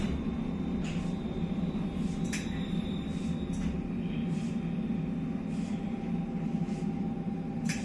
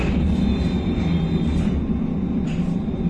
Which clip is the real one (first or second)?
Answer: first